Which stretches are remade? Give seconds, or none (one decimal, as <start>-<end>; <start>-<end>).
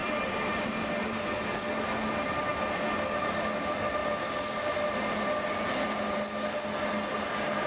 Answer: 0.0-0.9